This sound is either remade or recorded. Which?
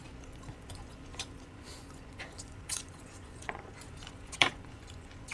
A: remade